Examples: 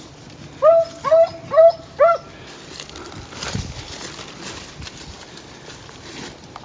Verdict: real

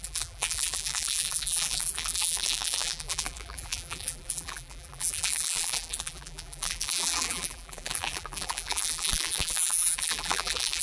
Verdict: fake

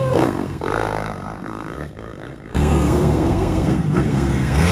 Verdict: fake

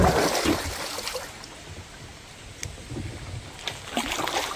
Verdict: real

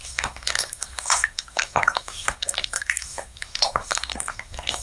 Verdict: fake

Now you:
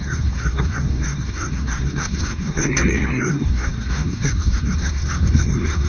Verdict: fake